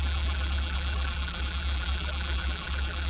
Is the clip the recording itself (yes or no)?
no